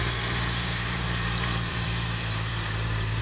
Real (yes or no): no